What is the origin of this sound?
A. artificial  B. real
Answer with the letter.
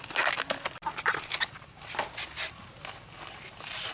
B